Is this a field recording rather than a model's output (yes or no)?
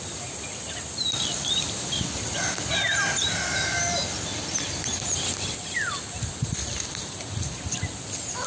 yes